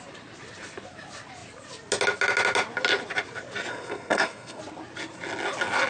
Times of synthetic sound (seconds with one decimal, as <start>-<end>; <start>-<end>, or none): 3.7-4.6